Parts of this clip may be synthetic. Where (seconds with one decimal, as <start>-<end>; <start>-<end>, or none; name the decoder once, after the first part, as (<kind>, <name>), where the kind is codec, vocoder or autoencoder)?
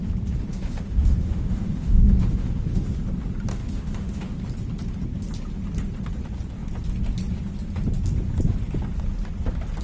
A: 0.5-3.0 (autoencoder, DAC-VAE); 3.5-4.4